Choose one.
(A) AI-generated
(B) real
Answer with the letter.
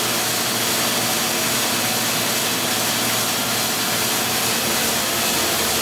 B